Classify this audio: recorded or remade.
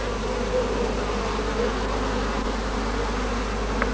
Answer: recorded